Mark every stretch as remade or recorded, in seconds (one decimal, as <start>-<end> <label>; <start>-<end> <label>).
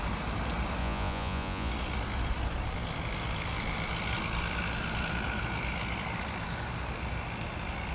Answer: 0.0-0.8 recorded; 0.8-1.7 remade; 1.7-7.9 recorded